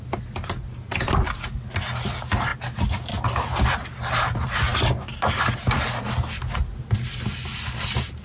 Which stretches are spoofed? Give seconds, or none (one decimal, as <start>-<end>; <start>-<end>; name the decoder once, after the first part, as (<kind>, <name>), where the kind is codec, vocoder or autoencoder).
none